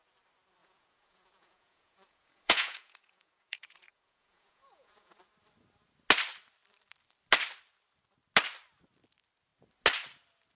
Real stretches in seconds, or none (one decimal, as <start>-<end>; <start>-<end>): 0.0-0.6; 5.2-10.5